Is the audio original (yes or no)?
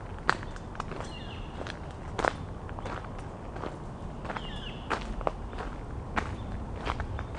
yes